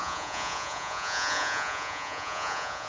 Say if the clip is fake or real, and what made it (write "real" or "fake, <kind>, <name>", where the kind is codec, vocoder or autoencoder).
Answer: fake, vocoder, Vocos